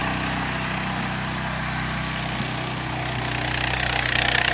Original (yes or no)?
yes